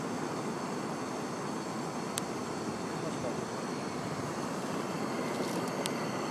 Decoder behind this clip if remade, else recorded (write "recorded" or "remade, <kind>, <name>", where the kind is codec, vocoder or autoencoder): recorded